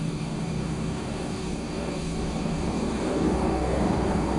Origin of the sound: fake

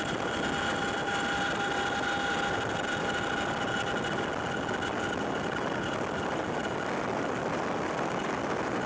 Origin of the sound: real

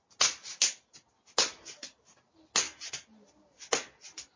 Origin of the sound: real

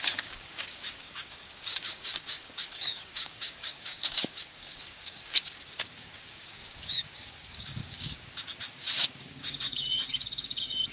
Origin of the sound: fake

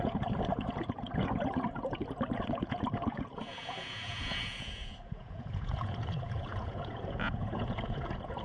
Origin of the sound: fake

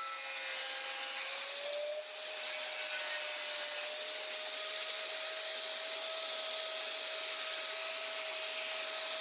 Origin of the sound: real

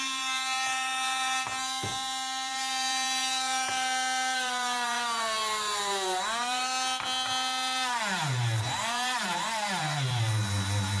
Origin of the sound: fake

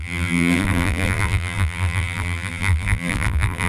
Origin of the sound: fake